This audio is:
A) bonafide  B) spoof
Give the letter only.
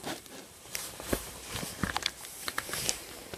B